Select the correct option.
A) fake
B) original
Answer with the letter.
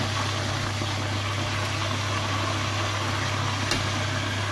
B